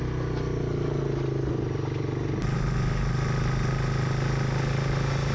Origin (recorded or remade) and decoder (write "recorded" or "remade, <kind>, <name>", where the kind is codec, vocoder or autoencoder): recorded